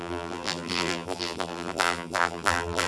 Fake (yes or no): yes